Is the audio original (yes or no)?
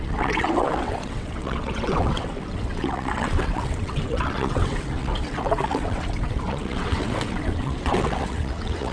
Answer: no